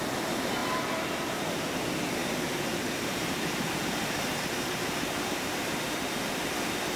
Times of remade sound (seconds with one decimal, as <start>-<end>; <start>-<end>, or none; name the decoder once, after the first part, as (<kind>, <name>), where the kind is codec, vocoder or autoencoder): 0.6-1.8 (vocoder, BigVGAN v2); 2.2-5.6